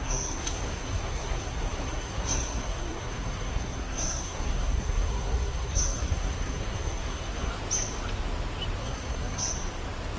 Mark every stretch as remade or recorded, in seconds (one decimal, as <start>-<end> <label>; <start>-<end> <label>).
0.0-7.5 remade; 7.5-8.8 recorded; 8.8-9.5 remade; 9.5-10.2 recorded